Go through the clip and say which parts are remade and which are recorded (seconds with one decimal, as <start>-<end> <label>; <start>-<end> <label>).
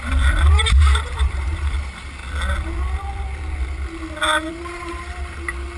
0.0-2.2 remade; 2.2-4.5 recorded; 4.5-5.8 remade